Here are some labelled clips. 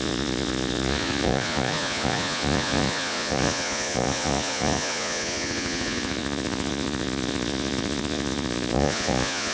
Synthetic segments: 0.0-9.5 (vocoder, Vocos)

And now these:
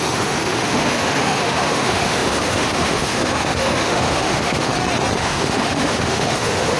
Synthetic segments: 0.0-4.7 (autoencoder, DAC-VAE); 5.2-6.8

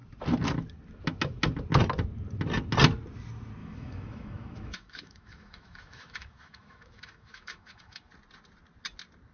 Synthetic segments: 3.6-8.1 (autoencoder, DAC-VAE)

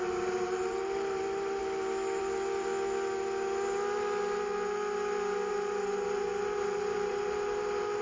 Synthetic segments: 0.0-1.6 (vocoder, BigVGAN v2); 2.2-2.7; 5.5-8.0